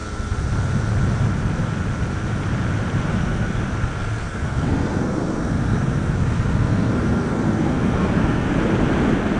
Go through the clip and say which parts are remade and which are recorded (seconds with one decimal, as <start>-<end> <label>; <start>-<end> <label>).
0.0-3.1 recorded; 3.1-3.6 remade; 3.6-4.0 recorded; 4.0-8.5 remade; 8.5-9.4 recorded